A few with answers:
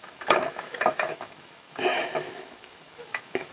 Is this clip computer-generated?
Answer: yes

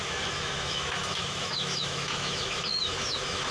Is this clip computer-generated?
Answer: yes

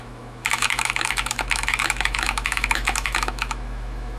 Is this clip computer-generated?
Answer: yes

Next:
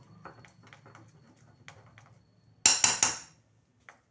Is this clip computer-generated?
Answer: no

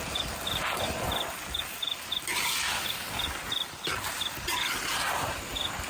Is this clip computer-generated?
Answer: no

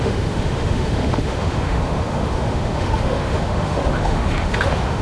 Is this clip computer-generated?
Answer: yes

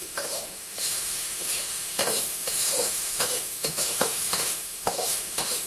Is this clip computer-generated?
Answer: yes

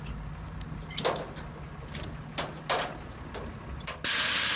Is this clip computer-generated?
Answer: no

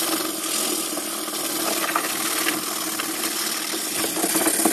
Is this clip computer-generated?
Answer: no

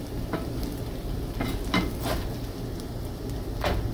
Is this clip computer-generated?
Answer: no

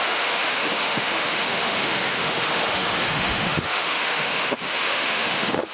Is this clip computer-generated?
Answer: yes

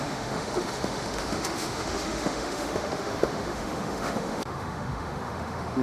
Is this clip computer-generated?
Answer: yes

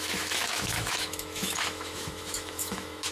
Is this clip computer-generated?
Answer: yes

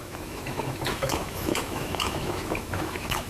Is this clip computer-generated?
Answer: yes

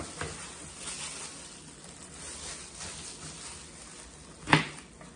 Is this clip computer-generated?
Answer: no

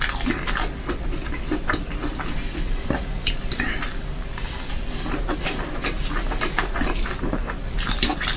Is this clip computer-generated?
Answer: no